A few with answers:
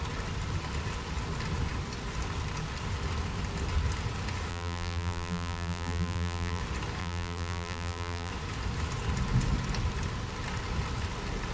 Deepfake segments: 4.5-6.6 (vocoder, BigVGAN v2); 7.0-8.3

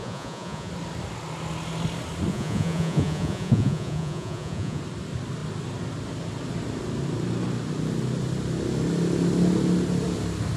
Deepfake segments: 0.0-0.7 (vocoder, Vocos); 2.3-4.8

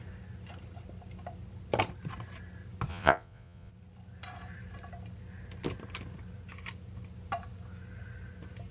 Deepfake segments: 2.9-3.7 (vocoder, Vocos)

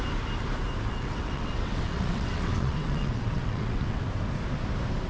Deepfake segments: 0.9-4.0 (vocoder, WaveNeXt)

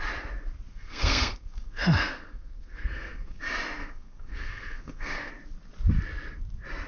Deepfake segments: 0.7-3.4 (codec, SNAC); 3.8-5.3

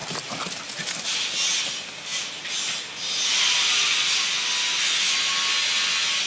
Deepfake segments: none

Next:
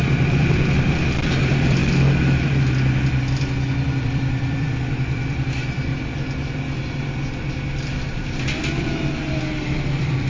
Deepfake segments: 0.0-1.8 (vocoder, BigVGAN v2); 4.0-5.9; 9.4-10.3